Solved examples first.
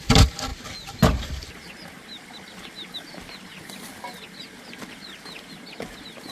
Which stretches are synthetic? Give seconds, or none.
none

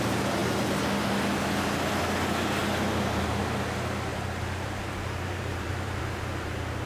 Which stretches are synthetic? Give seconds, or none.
2.6-3.4 (vocoder, BigVGAN v2); 4.1-6.0